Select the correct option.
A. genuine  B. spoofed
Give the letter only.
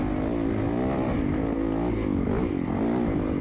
A